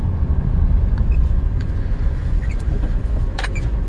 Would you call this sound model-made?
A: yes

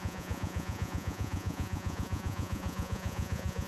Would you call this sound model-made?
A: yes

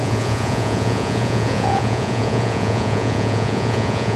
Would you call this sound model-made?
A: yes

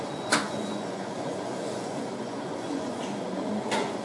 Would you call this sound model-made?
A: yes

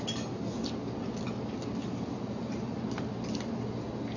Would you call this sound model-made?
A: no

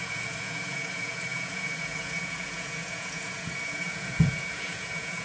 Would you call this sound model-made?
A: yes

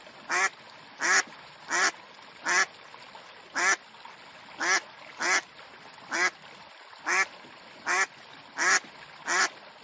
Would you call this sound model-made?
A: no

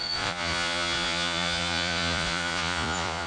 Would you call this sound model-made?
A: yes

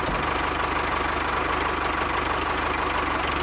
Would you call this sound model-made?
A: no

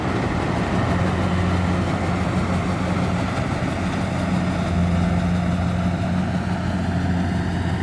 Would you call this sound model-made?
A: no